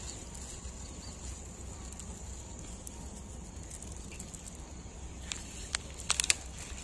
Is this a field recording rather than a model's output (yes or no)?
yes